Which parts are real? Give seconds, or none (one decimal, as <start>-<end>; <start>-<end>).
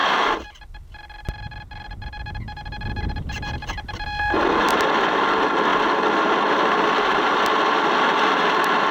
0.0-8.9